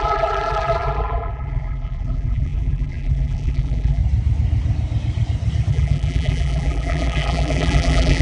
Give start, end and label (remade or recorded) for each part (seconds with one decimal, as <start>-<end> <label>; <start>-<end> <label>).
0.0-4.0 remade; 4.0-5.7 recorded; 5.7-8.2 remade